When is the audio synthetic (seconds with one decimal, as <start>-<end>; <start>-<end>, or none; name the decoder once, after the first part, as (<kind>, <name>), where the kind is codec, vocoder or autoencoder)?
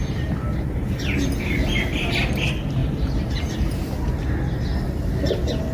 0.0-2.3 (vocoder, BigVGAN v2); 2.8-3.9